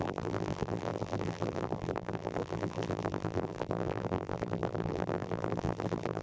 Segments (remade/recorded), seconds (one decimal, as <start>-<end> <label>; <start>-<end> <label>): 0.0-6.2 remade